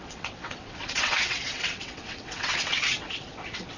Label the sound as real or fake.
fake